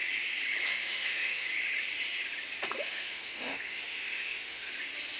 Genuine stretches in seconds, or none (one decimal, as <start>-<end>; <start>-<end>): 0.0-0.7; 1.5-2.8; 4.7-5.2